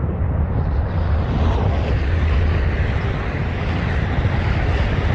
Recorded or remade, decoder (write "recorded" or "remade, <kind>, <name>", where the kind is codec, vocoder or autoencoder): recorded